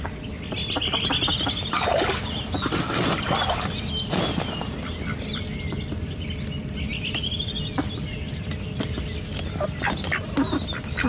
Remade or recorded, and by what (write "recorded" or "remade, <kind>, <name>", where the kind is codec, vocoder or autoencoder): recorded